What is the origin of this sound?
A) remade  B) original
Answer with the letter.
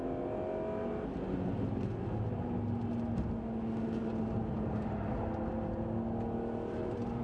B